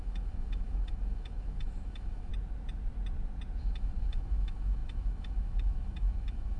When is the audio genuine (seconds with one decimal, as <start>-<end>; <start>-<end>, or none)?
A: 2.3-3.6